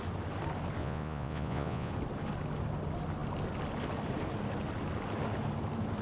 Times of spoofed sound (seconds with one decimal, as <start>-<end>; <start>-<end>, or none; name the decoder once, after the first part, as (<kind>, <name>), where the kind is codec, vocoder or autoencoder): 0.8-1.9 (vocoder, Vocos)